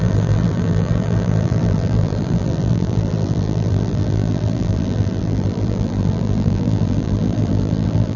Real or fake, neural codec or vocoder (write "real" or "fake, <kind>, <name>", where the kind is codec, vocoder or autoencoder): fake, vocoder, BigVGAN v2